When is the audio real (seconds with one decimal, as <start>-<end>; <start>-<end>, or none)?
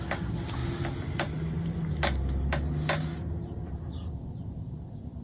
0.0-5.2